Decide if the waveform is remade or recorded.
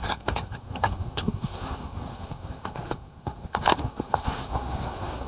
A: remade